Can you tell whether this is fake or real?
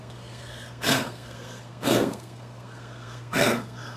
fake